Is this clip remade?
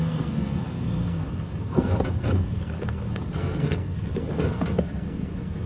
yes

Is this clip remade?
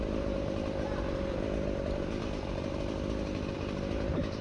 yes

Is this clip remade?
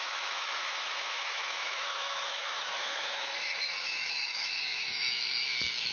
yes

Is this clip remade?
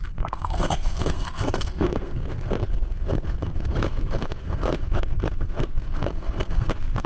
yes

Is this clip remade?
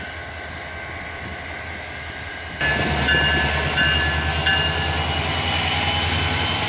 no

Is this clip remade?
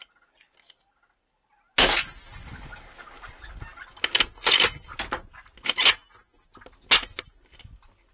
no